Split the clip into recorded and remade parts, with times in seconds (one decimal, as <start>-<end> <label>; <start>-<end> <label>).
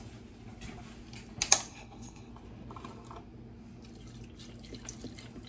0.0-1.7 recorded; 1.7-2.3 remade; 2.3-5.5 recorded